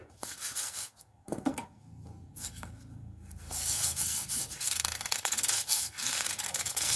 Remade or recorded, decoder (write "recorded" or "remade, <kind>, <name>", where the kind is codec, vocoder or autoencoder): remade, codec, SNAC